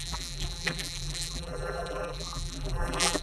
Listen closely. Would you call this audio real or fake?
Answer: fake